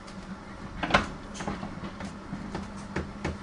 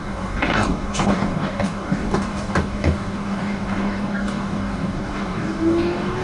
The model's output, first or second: second